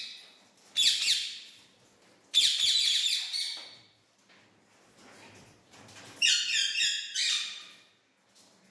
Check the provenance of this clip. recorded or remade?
recorded